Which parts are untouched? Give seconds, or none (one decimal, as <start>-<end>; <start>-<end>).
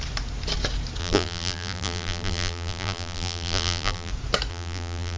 0.0-1.0; 4.1-4.5